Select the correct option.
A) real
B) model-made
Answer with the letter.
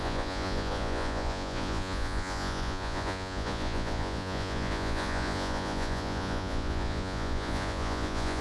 B